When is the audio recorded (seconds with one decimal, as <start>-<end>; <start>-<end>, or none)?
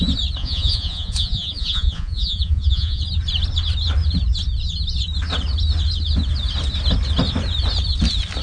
0.0-0.4; 3.0-8.4